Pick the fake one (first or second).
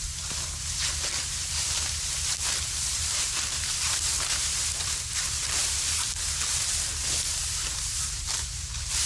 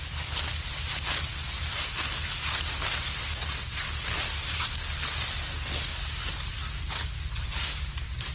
first